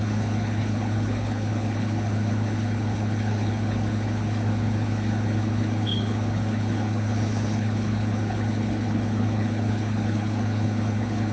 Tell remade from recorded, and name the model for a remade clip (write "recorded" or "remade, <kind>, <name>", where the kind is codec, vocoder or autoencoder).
remade, codec, HILCodec